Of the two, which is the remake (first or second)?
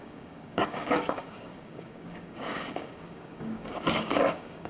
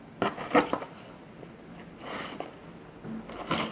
first